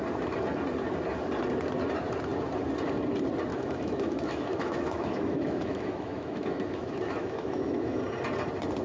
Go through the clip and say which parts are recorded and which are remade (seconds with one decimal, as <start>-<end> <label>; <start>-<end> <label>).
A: 0.0-3.5 recorded; 3.5-8.0 remade; 8.0-8.8 recorded